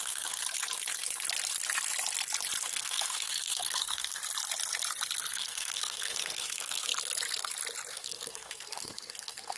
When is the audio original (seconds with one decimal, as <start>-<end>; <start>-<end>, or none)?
0.4-2.6; 4.2-5.3; 6.9-7.9